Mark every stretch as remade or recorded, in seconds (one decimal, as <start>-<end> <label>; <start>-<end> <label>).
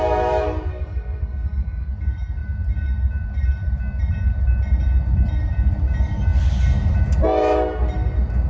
0.0-0.7 recorded; 0.7-1.9 remade; 1.9-8.5 recorded